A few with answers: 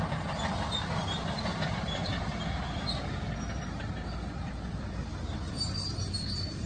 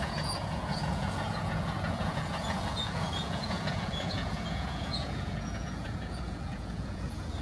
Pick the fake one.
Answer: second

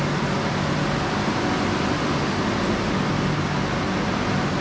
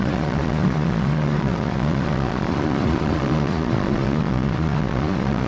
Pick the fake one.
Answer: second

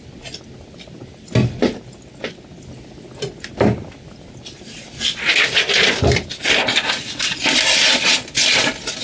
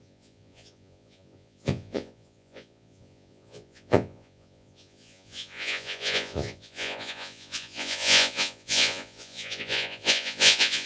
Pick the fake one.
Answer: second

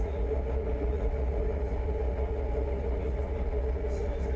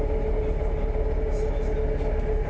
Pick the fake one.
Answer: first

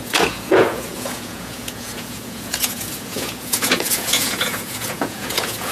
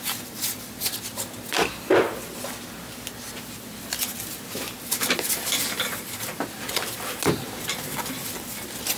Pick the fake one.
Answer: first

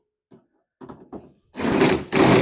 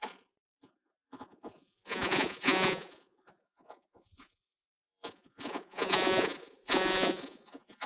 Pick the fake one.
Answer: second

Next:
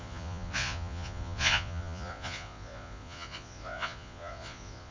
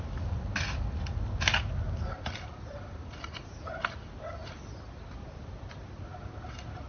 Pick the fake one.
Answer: first